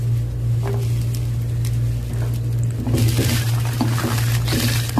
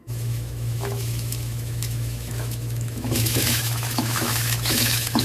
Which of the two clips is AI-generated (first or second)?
second